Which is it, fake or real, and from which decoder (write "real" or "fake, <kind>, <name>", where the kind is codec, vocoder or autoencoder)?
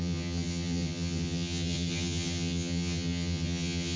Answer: fake, vocoder, HiFi-GAN